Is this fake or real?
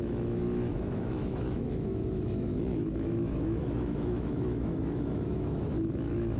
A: fake